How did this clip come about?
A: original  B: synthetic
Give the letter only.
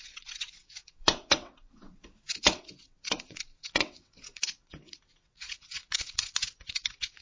B